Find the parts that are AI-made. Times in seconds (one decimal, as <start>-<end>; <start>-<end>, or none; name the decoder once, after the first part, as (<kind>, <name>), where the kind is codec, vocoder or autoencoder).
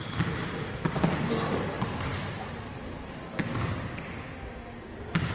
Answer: none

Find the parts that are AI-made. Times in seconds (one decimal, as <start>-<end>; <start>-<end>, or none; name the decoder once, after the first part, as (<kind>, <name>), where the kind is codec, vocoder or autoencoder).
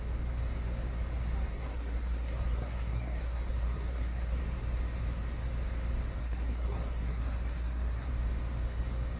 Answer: 1.5-4.4 (codec, SNAC); 6.2-8.1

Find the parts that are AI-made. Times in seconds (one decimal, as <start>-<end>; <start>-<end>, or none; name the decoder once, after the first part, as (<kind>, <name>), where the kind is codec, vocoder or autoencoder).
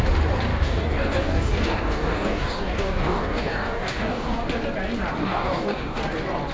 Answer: 0.5-4.4 (codec, DAC); 5.2-6.0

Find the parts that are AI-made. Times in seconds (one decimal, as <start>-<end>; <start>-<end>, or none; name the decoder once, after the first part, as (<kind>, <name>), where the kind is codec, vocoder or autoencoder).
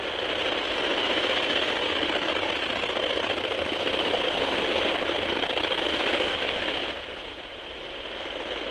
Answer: 6.8-7.6 (vocoder, Vocos)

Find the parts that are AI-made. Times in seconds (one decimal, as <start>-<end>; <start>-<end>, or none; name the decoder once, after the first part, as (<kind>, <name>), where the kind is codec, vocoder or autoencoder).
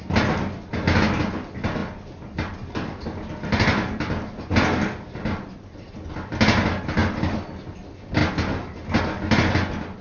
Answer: none